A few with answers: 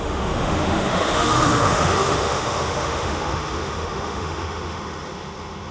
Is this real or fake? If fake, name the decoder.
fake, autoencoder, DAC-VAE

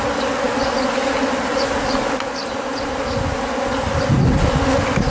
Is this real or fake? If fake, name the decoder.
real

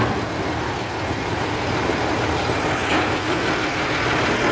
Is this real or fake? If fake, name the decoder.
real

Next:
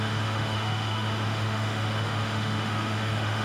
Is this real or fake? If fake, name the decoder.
fake, autoencoder, DAC-VAE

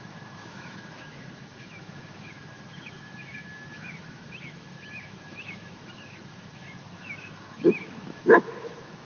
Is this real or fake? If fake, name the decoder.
fake, autoencoder, DAC-VAE